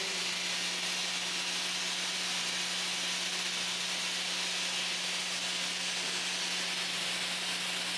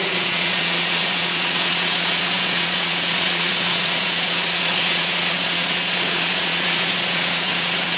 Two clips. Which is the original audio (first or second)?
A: first